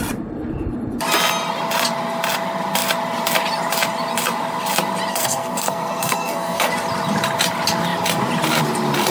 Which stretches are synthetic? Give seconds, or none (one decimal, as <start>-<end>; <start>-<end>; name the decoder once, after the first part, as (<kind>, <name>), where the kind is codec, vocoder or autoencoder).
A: 5.1-6.7 (codec, SNAC)